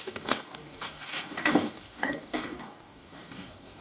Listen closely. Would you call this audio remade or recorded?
remade